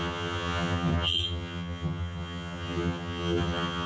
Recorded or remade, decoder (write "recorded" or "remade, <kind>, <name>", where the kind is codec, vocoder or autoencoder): remade, vocoder, HiFi-GAN